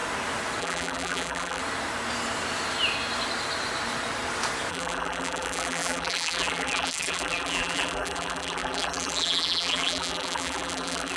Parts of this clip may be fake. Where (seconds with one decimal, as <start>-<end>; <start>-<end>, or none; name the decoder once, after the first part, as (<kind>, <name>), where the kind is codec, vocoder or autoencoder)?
0.6-1.6 (vocoder, BigVGAN v2); 4.7-11.2